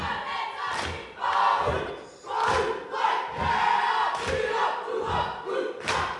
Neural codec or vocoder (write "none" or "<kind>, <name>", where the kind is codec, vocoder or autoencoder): none